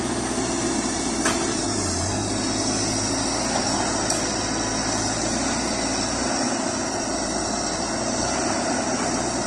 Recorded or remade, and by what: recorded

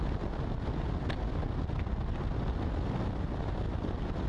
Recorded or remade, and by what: recorded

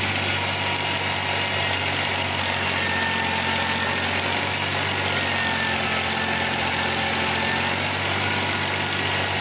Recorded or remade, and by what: recorded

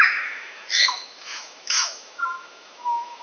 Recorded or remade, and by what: remade, autoencoder, DAC-VAE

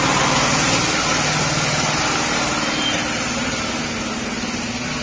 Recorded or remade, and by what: recorded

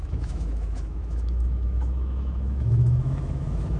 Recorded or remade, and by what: remade, autoencoder, DAC-VAE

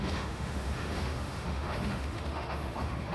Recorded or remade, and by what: remade, autoencoder, DAC-VAE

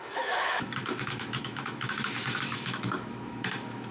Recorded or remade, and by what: remade, autoencoder, DAC-VAE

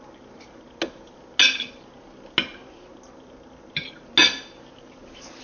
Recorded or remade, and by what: recorded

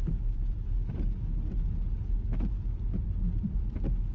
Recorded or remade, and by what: recorded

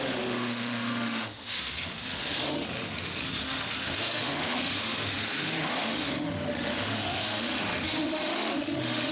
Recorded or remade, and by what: remade, autoencoder, DAC-VAE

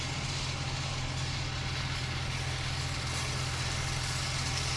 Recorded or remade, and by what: recorded